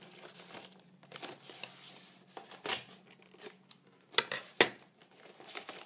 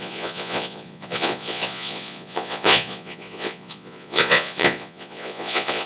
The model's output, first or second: second